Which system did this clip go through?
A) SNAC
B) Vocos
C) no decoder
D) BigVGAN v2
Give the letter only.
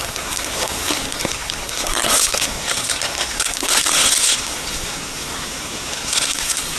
A